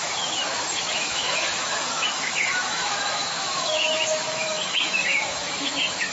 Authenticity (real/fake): fake